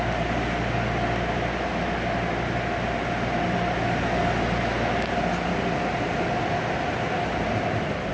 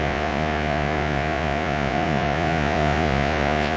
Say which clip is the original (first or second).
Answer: first